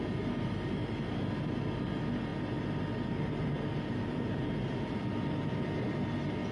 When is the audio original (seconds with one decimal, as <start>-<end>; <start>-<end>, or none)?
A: 0.0-6.5